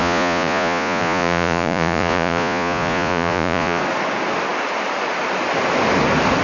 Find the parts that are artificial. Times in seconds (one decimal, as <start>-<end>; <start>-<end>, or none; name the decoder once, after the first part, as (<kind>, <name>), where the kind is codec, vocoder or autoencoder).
0.0-3.8 (vocoder, Vocos)